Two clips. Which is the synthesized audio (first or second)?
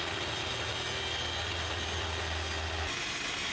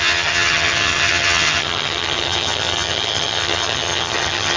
second